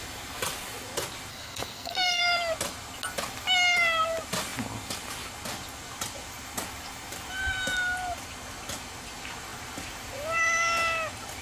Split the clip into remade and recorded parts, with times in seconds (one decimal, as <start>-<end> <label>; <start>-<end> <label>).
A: 0.0-1.3 recorded; 1.3-2.2 remade; 2.2-11.4 recorded